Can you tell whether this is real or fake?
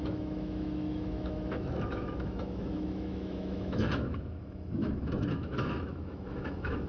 fake